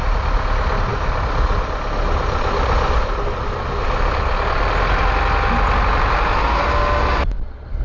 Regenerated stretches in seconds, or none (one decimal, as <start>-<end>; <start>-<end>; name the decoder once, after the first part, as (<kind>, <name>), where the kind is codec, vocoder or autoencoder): none